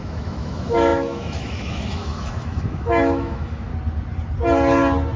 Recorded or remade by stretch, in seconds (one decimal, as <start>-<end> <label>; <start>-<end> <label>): 0.0-3.7 remade; 3.7-5.2 recorded